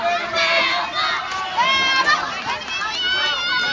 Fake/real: real